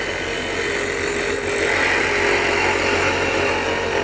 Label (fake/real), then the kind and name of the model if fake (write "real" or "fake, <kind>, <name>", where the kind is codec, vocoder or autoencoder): real